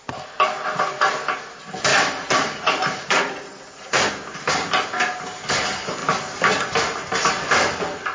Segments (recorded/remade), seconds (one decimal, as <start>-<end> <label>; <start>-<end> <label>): 0.0-1.9 recorded; 1.9-4.1 remade; 4.1-8.1 recorded